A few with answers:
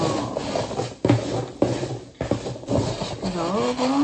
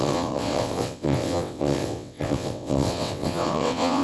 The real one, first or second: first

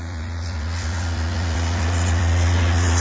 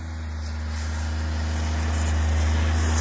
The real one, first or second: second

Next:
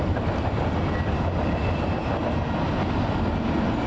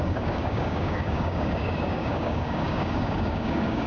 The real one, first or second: first